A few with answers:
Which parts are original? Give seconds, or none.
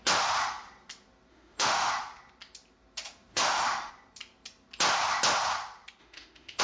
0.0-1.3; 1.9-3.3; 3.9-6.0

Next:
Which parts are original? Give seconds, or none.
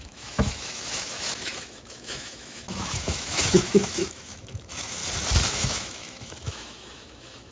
5.0-5.5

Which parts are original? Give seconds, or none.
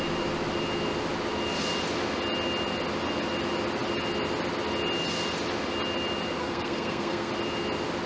0.0-6.4; 7.3-8.1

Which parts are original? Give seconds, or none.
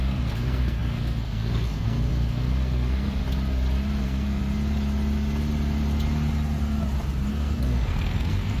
3.2-4.0; 4.4-7.3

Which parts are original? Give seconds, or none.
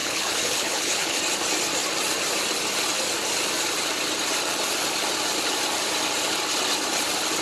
1.2-7.4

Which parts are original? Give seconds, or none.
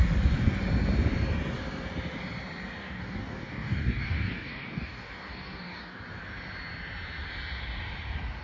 0.0-2.8; 6.0-8.4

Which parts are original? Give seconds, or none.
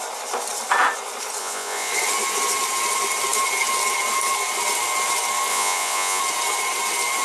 0.0-1.4; 1.9-5.5; 6.2-7.2